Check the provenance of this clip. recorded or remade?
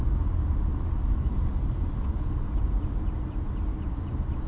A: recorded